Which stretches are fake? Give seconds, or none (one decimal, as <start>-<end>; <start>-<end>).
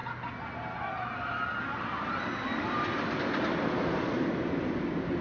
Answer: none